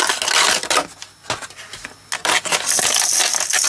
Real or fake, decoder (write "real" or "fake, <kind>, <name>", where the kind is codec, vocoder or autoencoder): real